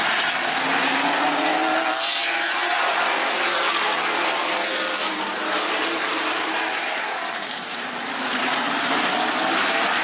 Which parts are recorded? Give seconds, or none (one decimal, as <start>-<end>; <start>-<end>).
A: 0.0-5.0; 8.2-10.0